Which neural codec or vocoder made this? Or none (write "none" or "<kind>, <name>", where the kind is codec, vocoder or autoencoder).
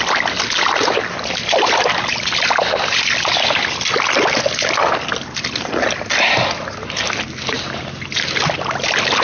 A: none